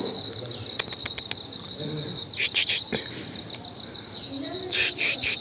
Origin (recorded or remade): recorded